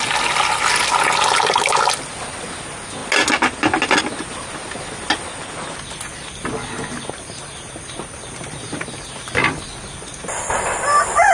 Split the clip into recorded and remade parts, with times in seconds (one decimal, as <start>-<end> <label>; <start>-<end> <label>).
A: 0.0-11.3 recorded